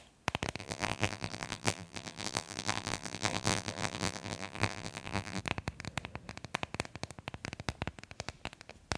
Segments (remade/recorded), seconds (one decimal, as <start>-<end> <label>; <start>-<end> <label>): 0.0-0.6 recorded; 0.6-5.4 remade; 5.4-9.0 recorded